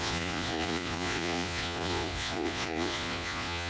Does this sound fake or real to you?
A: fake